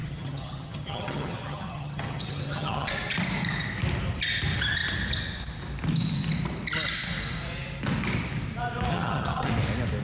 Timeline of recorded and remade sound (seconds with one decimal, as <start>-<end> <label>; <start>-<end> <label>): 0.0-2.9 remade; 2.9-8.9 recorded; 8.9-9.5 remade; 9.5-10.0 recorded